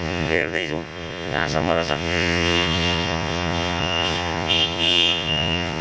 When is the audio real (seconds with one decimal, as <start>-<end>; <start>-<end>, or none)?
none